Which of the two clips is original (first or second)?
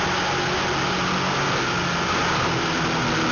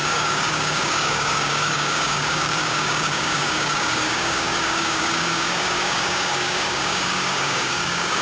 first